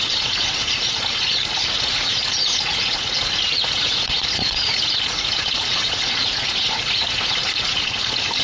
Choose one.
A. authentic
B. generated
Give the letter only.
B